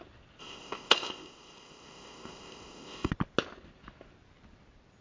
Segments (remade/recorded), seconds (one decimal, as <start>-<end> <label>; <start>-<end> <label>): 0.0-0.4 recorded; 0.4-3.1 remade; 3.1-5.0 recorded